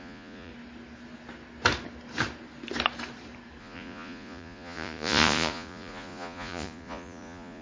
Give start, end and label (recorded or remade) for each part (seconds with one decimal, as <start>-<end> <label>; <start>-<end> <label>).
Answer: 0.0-0.5 remade; 0.5-3.6 recorded; 3.6-7.6 remade